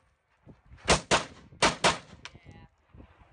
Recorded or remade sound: recorded